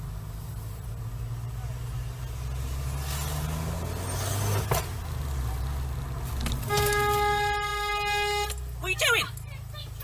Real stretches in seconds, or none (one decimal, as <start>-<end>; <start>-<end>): 0.0-10.0